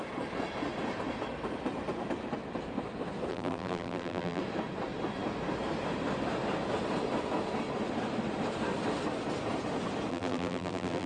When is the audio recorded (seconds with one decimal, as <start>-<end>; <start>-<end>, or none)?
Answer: 0.0-3.3; 4.4-10.1